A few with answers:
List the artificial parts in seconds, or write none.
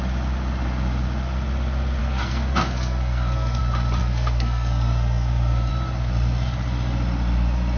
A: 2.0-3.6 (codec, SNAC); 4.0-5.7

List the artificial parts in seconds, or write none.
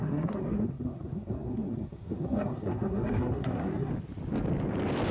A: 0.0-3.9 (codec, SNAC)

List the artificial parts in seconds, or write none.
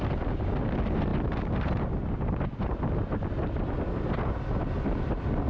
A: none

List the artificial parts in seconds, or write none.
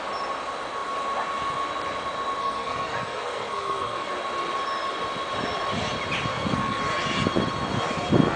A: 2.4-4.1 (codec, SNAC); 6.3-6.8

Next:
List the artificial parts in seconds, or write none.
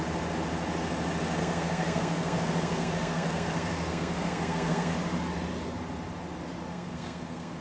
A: 1.4-4.9 (codec, SNAC); 6.7-7.6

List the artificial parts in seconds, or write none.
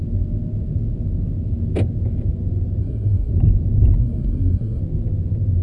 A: 2.8-3.3 (codec, SNAC); 4.0-4.8